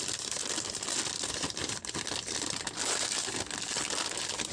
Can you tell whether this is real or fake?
real